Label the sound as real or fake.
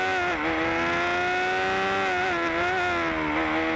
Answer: real